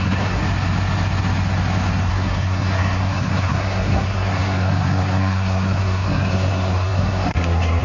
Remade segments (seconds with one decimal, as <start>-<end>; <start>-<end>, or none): 0.0-0.4; 2.1-7.8

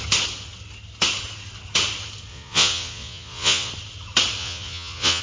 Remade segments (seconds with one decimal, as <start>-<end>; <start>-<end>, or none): 2.3-3.7; 4.4-5.2

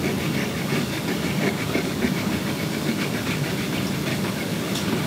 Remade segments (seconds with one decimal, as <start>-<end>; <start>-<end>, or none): 0.4-3.5; 4.1-4.6

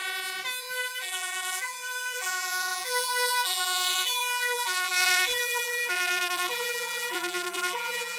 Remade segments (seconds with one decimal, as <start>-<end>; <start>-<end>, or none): 0.6-8.2

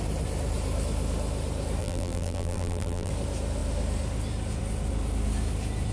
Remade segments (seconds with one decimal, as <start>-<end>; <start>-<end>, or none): 1.8-3.1

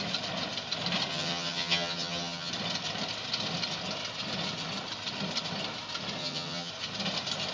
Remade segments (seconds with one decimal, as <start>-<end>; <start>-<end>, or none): 1.1-2.5; 6.2-6.7